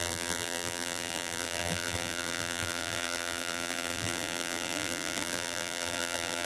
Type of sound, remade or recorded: remade